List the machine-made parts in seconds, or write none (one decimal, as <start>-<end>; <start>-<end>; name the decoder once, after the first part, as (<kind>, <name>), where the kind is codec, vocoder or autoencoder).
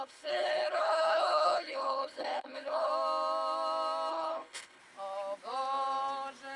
0.0-2.9 (codec, HILCodec); 4.1-4.8